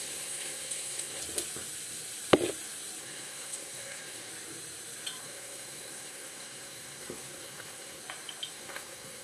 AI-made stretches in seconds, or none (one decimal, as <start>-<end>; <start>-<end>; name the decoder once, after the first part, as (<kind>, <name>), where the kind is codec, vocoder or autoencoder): 0.0-1.2 (codec, SNAC); 3.0-4.3; 5.2-8.0; 8.5-9.2